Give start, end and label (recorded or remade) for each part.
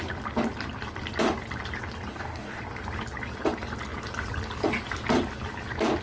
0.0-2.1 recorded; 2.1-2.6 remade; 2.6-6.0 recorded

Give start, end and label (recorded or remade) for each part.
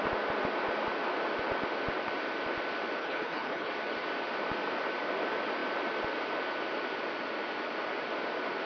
0.0-3.0 recorded; 3.0-3.7 remade; 3.7-8.7 recorded